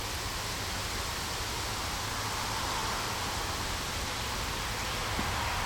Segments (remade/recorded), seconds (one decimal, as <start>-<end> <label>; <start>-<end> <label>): 0.0-5.7 recorded